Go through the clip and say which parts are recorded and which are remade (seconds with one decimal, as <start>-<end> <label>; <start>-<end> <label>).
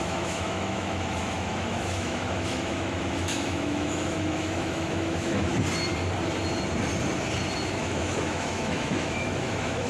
0.0-5.5 remade; 5.5-7.8 recorded; 7.8-9.9 remade